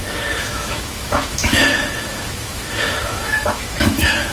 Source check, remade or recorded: remade